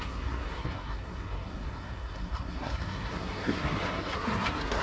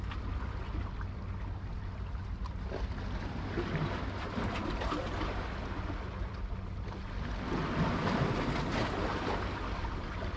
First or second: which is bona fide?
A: second